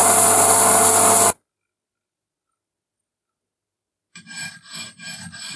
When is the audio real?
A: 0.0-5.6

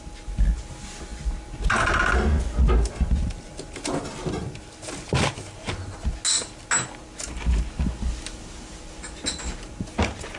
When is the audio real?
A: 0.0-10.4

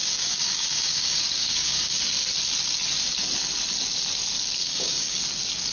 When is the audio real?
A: 2.0-4.6; 5.2-5.7

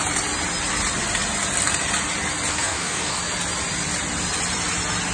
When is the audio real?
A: 0.0-2.5; 3.2-5.1

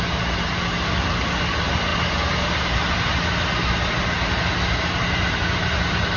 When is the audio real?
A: 0.0-6.2

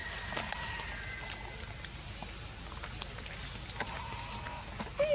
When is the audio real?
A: 0.0-5.1